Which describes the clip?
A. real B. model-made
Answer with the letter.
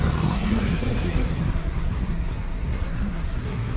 B